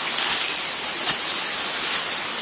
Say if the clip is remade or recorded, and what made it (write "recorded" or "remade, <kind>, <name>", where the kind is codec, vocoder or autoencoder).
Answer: recorded